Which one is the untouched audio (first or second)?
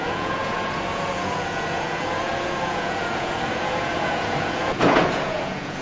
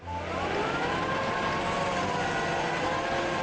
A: second